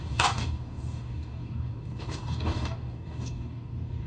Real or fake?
fake